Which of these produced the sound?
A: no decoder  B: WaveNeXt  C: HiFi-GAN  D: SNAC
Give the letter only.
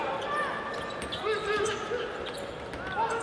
A